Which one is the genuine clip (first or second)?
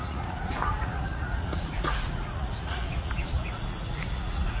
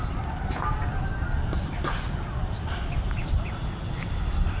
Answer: second